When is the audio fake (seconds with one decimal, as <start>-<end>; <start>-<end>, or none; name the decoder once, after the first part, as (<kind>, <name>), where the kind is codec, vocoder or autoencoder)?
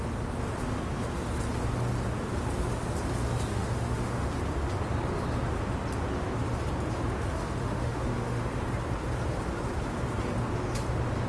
3.5-4.3 (autoencoder, DAC-VAE); 7.6-8.4